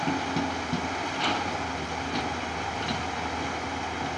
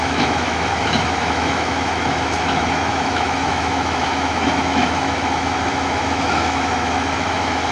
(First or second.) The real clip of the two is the first